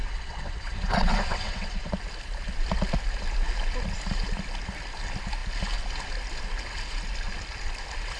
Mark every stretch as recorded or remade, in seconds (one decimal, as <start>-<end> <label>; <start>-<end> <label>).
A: 0.0-1.9 remade; 1.9-8.2 recorded